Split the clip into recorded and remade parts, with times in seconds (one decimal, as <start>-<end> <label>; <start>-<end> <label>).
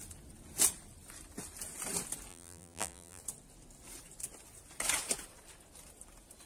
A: 0.0-2.3 recorded; 2.3-3.2 remade; 3.2-6.5 recorded